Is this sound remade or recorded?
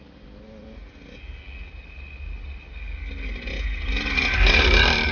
recorded